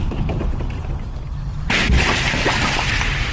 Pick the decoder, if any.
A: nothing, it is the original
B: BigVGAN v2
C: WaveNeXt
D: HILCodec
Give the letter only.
B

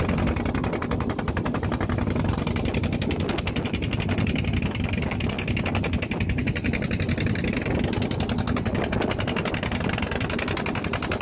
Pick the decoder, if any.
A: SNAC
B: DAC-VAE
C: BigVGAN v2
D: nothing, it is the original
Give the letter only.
D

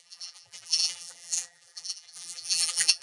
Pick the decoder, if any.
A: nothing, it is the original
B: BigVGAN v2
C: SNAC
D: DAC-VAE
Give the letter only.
B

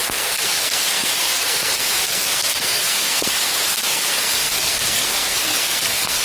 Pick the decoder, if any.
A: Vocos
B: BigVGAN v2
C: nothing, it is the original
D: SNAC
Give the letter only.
D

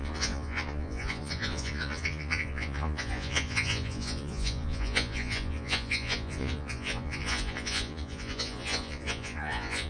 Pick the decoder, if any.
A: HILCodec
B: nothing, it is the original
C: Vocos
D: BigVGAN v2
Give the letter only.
C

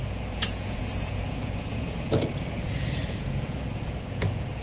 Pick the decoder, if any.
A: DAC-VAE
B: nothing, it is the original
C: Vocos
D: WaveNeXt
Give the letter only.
C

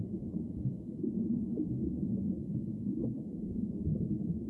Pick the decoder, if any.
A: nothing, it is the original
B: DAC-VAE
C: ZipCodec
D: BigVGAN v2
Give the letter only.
A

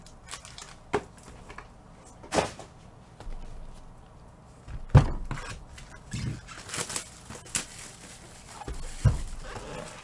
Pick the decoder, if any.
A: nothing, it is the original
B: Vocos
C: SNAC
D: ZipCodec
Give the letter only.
A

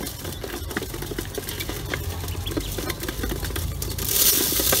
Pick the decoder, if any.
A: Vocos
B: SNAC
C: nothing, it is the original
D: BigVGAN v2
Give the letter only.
C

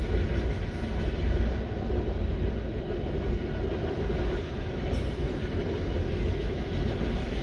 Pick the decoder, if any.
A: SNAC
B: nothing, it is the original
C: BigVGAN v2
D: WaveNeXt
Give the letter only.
B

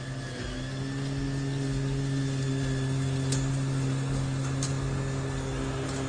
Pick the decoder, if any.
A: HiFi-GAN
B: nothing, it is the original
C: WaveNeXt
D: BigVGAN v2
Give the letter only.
B